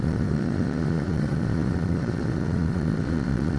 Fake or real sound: fake